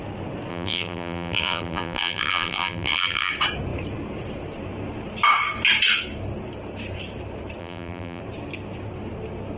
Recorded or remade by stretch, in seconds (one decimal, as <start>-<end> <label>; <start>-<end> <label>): 0.0-0.5 recorded; 0.5-3.3 remade; 3.3-7.6 recorded; 7.6-8.2 remade; 8.2-9.6 recorded

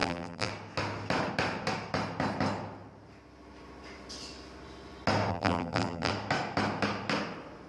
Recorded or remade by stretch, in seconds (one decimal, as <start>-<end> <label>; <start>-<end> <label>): 0.0-0.5 remade; 0.5-5.3 recorded; 5.3-6.1 remade; 6.1-7.7 recorded

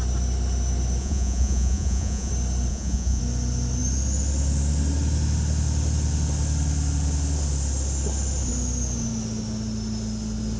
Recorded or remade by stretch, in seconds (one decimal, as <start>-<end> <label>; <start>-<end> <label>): 0.0-1.0 recorded; 1.0-2.3 remade; 2.3-2.7 recorded; 2.7-3.2 remade; 3.2-10.6 recorded

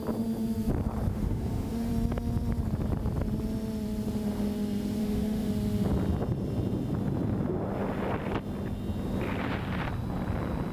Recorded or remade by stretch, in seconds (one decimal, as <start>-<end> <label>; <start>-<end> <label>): 0.0-1.1 recorded; 1.1-1.9 remade; 1.9-5.0 recorded; 5.0-5.5 remade; 5.5-10.7 recorded

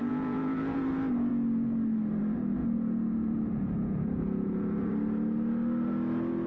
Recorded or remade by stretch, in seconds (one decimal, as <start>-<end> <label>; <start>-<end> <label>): 0.0-0.9 remade; 0.9-2.6 recorded; 2.6-4.9 remade; 4.9-6.5 recorded

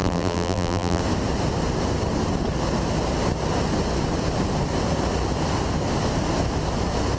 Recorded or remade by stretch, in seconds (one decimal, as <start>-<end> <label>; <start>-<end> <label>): 0.0-1.0 remade; 1.0-7.2 recorded